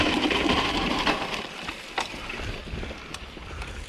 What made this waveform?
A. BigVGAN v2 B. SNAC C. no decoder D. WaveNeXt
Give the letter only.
C